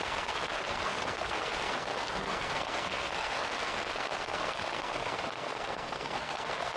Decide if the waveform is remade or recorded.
remade